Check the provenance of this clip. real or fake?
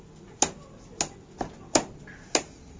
real